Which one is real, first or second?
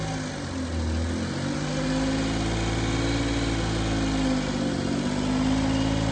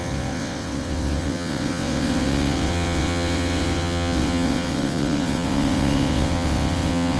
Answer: first